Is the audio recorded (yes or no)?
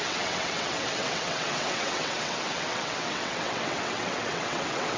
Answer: no